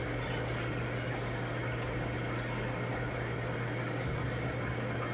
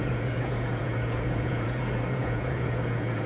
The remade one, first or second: second